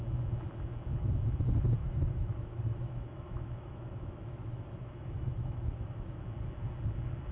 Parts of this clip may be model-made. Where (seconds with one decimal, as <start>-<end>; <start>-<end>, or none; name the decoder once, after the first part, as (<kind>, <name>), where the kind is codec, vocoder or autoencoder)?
1.8-6.2 (autoencoder, DAC-VAE)